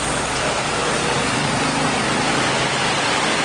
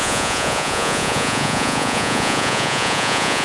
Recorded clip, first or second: first